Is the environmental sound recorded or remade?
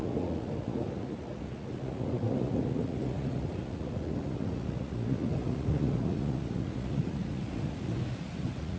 remade